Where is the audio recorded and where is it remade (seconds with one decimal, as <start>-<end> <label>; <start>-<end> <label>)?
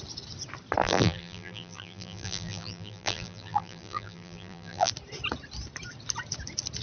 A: 0.0-0.8 recorded; 0.8-4.9 remade; 4.9-6.8 recorded